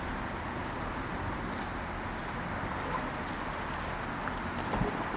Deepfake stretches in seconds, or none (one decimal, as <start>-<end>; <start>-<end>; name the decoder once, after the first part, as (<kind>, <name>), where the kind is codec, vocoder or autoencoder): none

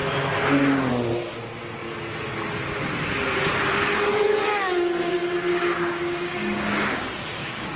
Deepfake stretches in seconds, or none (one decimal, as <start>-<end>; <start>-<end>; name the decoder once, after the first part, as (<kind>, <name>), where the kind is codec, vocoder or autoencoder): 5.5-7.8 (codec, DAC)

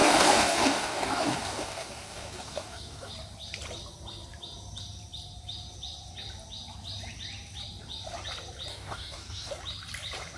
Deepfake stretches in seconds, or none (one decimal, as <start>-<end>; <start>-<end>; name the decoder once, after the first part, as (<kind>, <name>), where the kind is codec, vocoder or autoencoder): 0.0-3.1 (codec, DAC); 8.7-9.5

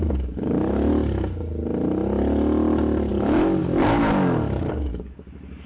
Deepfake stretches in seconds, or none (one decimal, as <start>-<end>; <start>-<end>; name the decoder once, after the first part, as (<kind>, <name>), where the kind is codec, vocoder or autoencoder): 0.0-0.9 (codec, DAC); 3.1-5.7

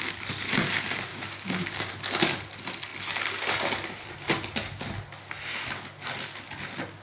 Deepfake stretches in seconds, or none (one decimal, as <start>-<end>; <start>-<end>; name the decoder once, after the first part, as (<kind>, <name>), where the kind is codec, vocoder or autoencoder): 1.1-1.9 (codec, DAC)

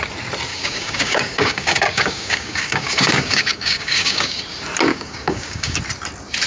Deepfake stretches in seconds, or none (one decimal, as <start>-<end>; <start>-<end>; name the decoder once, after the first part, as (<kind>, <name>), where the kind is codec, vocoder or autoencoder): 0.5-4.4 (codec, DAC); 4.9-5.8

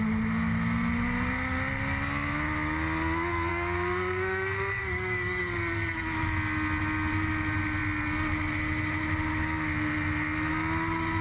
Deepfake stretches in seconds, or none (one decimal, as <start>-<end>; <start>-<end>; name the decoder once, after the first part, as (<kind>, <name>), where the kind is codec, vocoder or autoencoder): 3.5-5.4 (codec, DAC)

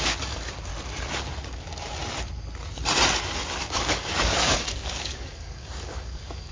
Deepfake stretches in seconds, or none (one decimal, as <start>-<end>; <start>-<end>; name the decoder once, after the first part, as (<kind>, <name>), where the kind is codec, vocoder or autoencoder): 0.0-0.7 (codec, DAC); 1.5-2.0; 3.6-6.5